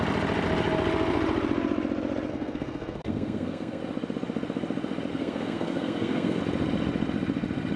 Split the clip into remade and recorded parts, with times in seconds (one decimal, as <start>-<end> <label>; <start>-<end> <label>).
0.0-2.3 recorded; 2.3-3.8 remade; 3.8-5.1 recorded; 5.1-6.4 remade; 6.4-7.8 recorded